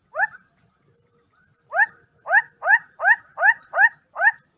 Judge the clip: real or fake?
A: fake